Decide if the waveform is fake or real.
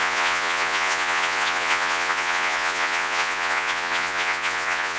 fake